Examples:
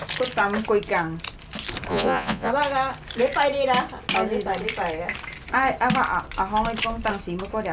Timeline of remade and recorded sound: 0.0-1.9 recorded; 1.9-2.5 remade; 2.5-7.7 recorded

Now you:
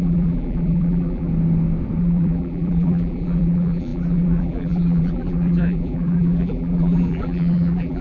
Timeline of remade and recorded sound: 0.0-1.3 remade; 1.3-2.0 recorded; 2.0-8.0 remade

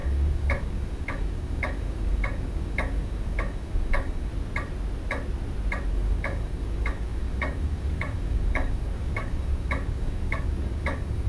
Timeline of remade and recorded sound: 0.0-4.3 remade; 4.3-5.9 recorded; 5.9-11.3 remade

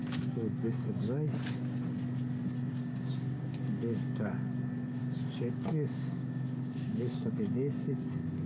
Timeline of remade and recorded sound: 0.0-2.7 recorded; 2.7-4.3 remade; 4.3-5.0 recorded; 5.0-7.3 remade; 7.3-8.5 recorded

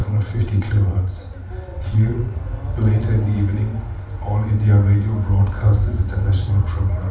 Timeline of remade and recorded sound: 0.0-0.7 remade; 0.7-1.7 recorded; 1.7-2.4 remade; 2.4-7.1 recorded

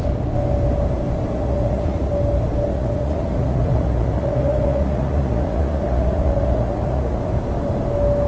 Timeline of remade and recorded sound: 0.0-1.3 recorded; 1.3-2.1 remade; 2.1-2.7 recorded; 2.7-7.2 remade; 7.2-8.3 recorded

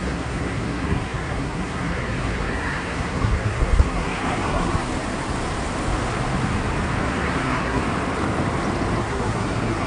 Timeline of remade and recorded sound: 0.0-4.9 remade; 4.9-7.0 recorded; 7.0-7.8 remade; 7.8-9.0 recorded; 9.0-9.9 remade